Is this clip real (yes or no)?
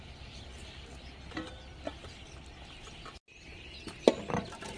yes